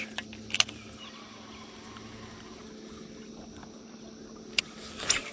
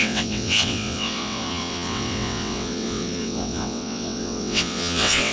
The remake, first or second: second